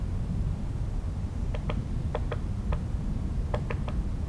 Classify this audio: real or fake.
real